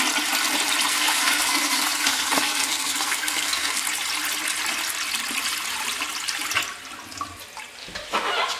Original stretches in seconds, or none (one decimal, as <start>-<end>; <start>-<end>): 0.0-0.9; 3.8-8.6